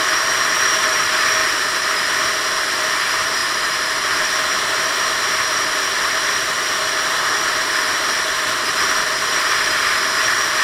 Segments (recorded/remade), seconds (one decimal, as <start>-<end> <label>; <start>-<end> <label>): 0.0-1.4 recorded; 1.4-2.2 remade; 2.2-3.4 recorded; 3.4-4.9 remade; 4.9-10.6 recorded